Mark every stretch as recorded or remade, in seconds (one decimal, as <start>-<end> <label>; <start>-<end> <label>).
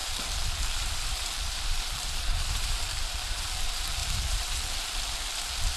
0.0-3.5 remade; 3.5-4.0 recorded; 4.0-4.9 remade; 4.9-5.8 recorded